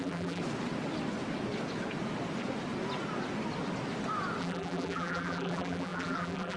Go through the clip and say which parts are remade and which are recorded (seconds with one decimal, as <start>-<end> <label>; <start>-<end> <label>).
0.0-0.4 remade; 0.4-4.4 recorded; 4.4-6.6 remade